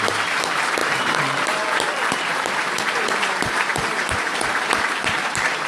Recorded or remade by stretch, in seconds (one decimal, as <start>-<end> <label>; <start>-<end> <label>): 0.0-5.7 remade